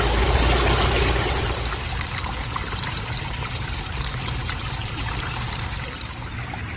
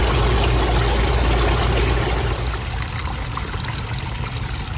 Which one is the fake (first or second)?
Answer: first